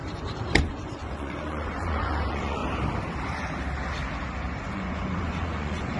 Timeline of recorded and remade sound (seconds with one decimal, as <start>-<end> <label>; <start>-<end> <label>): 0.0-0.6 recorded; 0.6-2.6 remade; 2.6-4.6 recorded; 4.6-6.0 remade